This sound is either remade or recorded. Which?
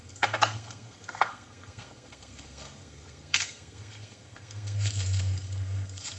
remade